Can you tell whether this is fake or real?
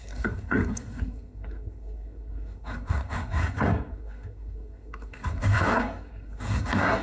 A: fake